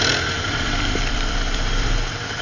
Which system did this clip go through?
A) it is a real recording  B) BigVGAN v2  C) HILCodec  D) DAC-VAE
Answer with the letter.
B